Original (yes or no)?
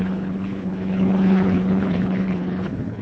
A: no